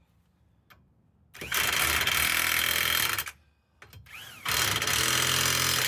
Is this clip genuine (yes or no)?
yes